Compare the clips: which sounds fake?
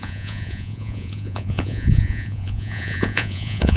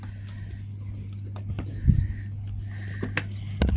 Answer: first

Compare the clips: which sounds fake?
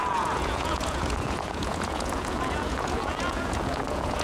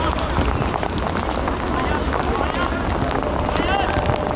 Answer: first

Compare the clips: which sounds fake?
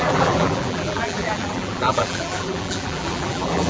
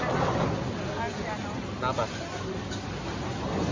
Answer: first